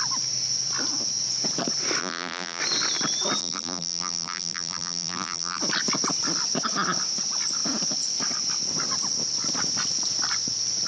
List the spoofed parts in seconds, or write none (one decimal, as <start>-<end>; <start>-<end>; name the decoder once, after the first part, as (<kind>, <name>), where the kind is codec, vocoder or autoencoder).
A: 2.0-2.6 (vocoder, BigVGAN v2); 3.4-5.6

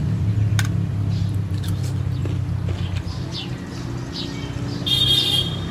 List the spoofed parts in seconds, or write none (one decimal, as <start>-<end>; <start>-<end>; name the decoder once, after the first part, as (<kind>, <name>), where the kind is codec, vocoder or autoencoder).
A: none

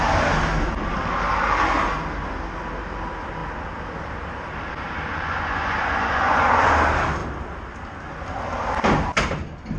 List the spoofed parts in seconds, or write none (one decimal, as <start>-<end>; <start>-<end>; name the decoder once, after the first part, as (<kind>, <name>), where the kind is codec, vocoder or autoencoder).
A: 5.1-6.7 (vocoder, Vocos)

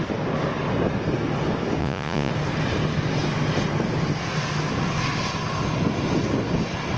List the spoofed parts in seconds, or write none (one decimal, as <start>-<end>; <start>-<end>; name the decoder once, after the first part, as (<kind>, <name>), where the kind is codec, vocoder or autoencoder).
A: 1.8-2.3 (vocoder, Vocos)

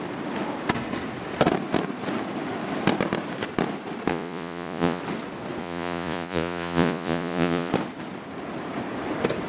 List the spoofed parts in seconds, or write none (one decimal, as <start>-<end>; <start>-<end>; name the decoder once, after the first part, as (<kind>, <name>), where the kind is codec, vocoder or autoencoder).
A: 4.1-5.0 (vocoder, Vocos); 5.6-7.7